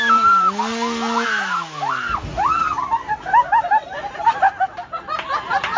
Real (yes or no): yes